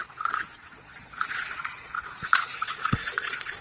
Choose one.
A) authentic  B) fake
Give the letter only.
B